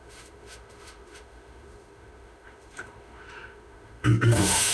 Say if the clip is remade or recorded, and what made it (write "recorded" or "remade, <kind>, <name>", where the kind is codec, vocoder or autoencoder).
remade, autoencoder, DAC-VAE